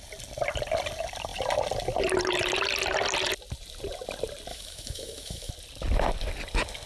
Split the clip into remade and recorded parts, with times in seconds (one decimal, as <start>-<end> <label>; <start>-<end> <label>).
0.0-4.5 recorded; 4.5-5.5 remade; 5.5-6.9 recorded